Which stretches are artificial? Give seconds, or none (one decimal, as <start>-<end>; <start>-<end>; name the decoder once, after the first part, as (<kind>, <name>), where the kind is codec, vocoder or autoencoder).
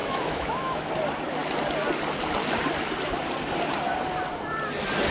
0.0-0.9 (autoencoder, DAC-VAE)